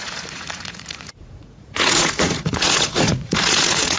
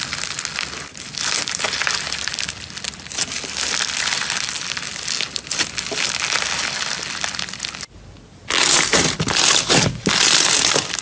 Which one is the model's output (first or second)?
first